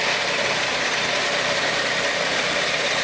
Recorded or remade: recorded